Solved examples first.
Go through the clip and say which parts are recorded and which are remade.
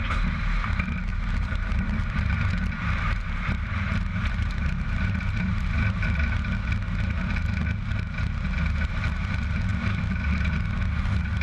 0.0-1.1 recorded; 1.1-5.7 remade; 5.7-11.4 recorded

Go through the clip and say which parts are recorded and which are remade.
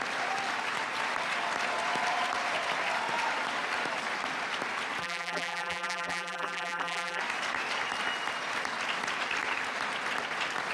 0.0-5.0 recorded; 5.0-7.2 remade; 7.2-10.7 recorded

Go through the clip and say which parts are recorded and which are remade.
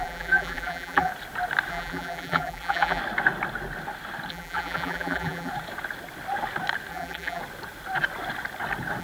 0.0-1.1 remade; 1.1-1.7 recorded; 1.7-3.0 remade; 3.0-4.3 recorded; 4.3-5.5 remade; 5.5-6.9 recorded; 6.9-7.4 remade; 7.4-9.0 recorded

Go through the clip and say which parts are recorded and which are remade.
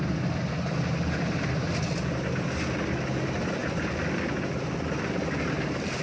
0.0-6.0 recorded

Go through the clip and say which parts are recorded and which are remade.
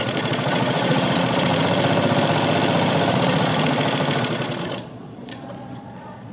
0.0-1.5 remade; 1.5-3.1 recorded; 3.1-3.5 remade; 3.5-4.2 recorded; 4.2-6.3 remade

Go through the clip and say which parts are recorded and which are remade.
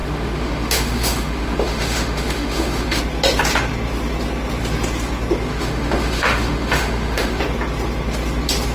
0.0-3.0 remade; 3.0-5.5 recorded; 5.5-7.4 remade; 7.4-8.7 recorded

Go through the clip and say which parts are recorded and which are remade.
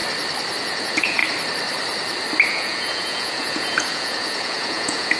0.0-0.6 recorded; 0.6-1.2 remade; 1.2-2.5 recorded; 2.5-5.2 remade